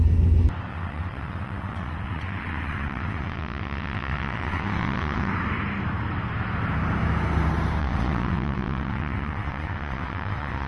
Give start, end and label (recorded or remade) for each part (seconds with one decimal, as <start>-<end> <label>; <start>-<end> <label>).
0.0-0.7 recorded; 0.7-5.3 remade; 5.3-7.8 recorded; 7.8-10.7 remade